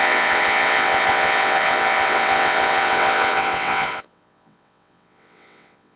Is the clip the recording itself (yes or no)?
no